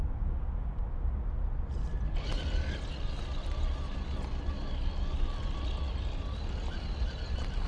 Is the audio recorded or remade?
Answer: recorded